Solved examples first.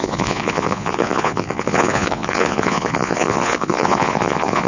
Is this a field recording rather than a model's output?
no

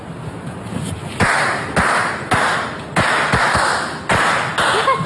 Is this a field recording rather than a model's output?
yes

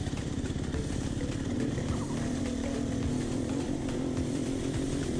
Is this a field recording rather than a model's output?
no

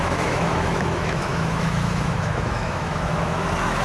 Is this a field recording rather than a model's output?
no